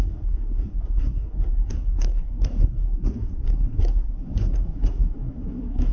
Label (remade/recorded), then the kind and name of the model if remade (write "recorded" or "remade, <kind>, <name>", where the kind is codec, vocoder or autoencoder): remade, codec, SNAC